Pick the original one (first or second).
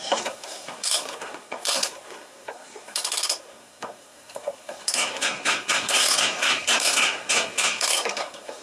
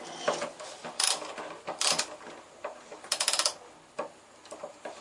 second